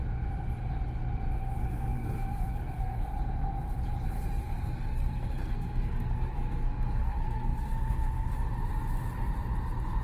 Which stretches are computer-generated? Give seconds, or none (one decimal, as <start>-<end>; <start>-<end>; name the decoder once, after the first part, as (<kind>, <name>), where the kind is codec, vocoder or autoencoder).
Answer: 1.6-3.0 (codec, SNAC); 4.4-8.5